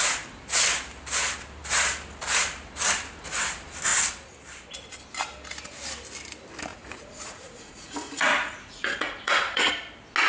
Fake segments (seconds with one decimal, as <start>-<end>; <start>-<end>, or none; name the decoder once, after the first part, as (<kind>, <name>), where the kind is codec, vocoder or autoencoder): 6.7-9.7 (vocoder, Vocos)